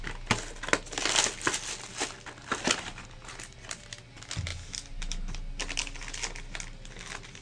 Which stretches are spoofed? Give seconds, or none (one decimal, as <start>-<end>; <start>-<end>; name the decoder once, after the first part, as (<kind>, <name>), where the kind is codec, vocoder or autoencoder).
none